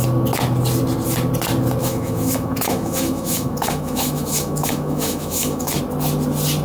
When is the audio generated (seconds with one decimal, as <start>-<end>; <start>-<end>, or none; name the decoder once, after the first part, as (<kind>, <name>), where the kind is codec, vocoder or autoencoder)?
1.8-5.8 (autoencoder, DAC-VAE)